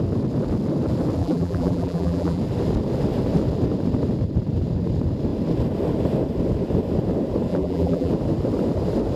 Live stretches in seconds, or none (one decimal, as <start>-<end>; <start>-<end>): 0.0-1.2; 2.4-7.5; 8.1-9.2